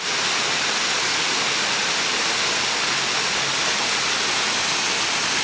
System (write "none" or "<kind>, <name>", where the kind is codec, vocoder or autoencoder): none